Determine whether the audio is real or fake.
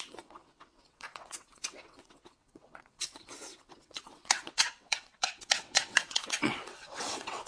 fake